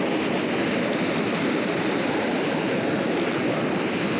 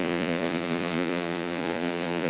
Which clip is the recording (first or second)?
first